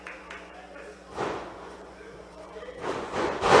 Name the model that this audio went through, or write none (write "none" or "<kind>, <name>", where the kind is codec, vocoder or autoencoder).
vocoder, Vocos